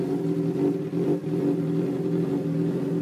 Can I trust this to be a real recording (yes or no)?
yes